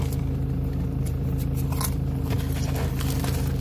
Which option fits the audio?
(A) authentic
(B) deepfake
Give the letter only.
A